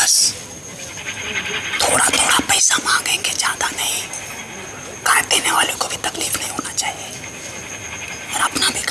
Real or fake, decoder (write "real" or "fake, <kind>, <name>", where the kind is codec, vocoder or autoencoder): real